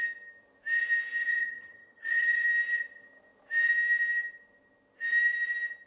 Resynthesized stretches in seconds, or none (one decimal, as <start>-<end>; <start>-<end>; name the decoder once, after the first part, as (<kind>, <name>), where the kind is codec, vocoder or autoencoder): 1.2-2.5 (vocoder, HiFi-GAN)

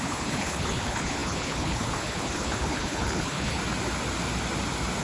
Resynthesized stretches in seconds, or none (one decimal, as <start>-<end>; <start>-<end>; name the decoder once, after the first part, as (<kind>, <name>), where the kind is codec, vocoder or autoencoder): 0.0-3.6 (codec, HILCodec)